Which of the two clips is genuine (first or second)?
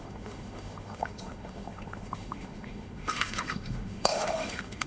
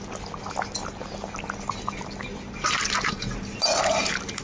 second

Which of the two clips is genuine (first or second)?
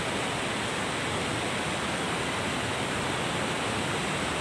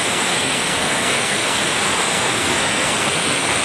first